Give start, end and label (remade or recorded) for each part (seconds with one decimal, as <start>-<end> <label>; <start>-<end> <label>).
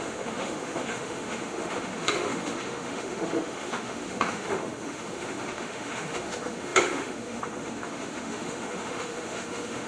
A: 0.0-9.9 remade